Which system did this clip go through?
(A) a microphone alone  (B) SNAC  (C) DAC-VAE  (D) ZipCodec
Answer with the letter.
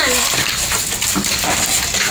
A